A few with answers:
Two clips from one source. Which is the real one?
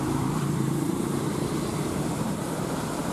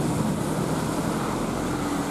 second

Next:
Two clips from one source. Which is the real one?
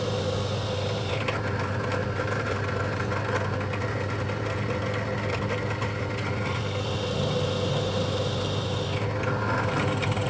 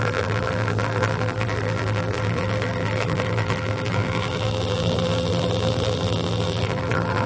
first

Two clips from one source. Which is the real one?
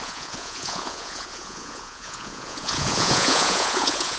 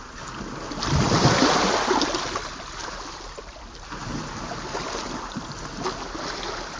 second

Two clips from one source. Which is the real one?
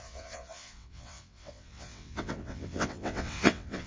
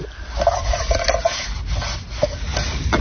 second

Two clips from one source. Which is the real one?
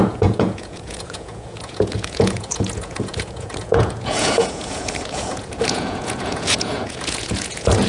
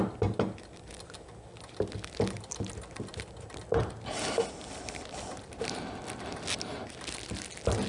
second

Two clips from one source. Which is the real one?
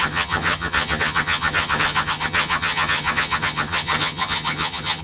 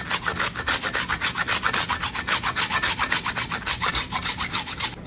second